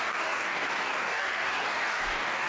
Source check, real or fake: fake